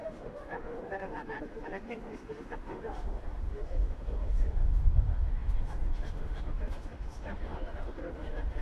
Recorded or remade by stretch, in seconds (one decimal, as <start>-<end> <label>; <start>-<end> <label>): 0.0-8.6 remade